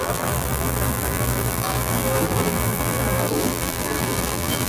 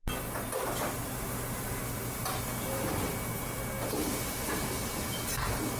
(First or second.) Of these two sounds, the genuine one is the second